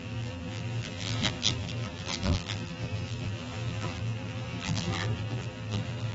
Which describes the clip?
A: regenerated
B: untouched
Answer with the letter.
A